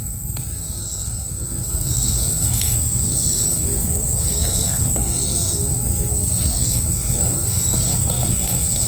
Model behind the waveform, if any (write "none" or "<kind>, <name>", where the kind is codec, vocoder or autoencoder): codec, SNAC